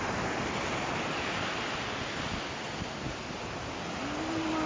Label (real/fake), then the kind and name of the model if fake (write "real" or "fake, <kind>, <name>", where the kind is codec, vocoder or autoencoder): real